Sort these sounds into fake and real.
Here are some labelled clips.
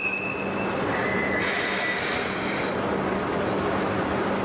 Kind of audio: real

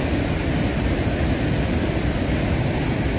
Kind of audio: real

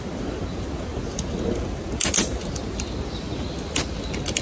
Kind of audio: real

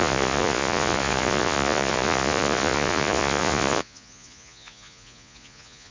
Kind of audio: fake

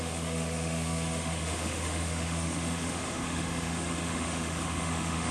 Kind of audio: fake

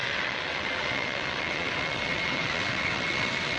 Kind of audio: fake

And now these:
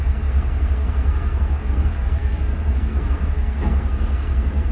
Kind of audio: fake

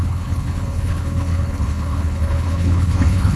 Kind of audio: fake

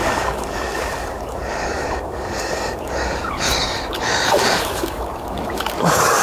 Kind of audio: fake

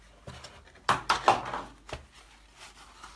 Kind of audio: real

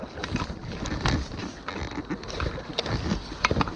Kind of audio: real